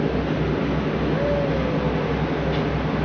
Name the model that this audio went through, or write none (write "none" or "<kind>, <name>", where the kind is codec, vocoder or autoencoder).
none